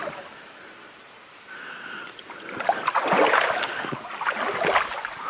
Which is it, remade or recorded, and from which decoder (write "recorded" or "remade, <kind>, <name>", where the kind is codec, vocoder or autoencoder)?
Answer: recorded